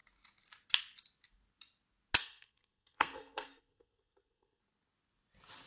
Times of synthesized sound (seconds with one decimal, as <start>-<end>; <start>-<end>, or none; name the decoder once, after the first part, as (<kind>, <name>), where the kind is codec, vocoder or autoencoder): 2.2-4.6 (codec, SNAC)